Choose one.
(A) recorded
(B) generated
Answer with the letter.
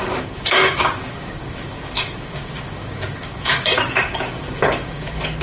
B